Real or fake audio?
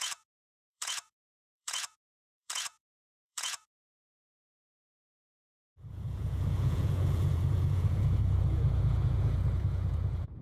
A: fake